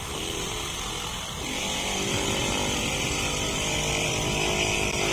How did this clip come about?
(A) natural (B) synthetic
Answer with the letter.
A